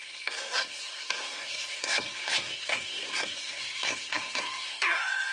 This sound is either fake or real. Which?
fake